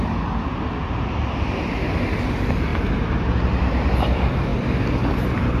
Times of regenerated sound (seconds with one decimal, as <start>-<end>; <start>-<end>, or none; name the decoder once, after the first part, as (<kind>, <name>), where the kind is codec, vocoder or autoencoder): none